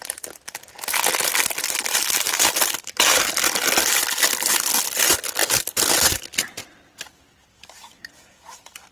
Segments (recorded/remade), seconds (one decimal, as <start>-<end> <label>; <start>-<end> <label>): 0.0-8.9 recorded